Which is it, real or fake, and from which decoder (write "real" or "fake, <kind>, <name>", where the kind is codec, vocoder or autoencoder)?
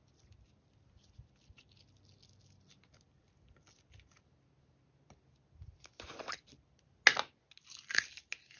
real